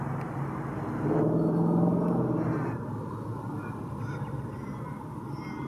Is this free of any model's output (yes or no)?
yes